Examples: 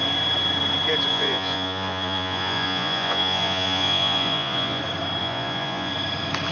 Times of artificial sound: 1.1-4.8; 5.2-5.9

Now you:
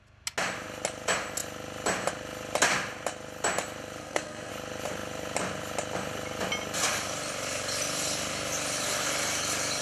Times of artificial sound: 4.0-4.5

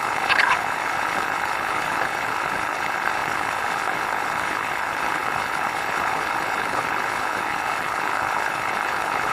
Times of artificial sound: 0.0-9.3